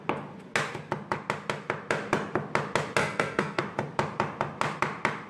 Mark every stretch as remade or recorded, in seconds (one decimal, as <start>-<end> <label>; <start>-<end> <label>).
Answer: 0.0-3.0 recorded; 3.0-3.6 remade; 3.6-5.3 recorded